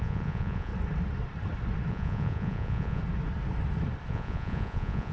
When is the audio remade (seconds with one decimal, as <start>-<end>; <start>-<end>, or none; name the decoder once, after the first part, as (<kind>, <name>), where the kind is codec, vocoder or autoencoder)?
0.0-0.7 (vocoder, Vocos); 1.9-3.0; 4.1-5.1